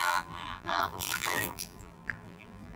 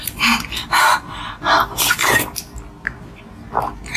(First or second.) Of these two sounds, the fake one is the first